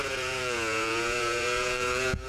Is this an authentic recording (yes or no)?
no